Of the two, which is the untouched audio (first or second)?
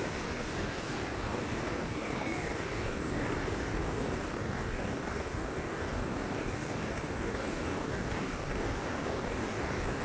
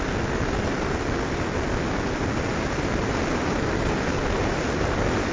second